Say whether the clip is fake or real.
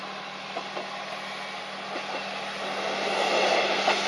real